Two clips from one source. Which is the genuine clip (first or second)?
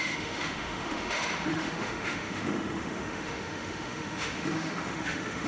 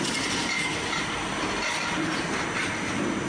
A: second